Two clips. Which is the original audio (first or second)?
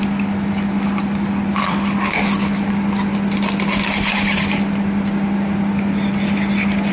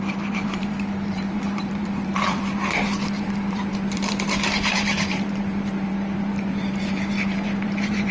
first